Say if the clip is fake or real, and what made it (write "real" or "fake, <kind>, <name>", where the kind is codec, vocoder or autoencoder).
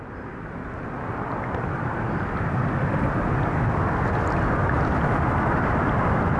real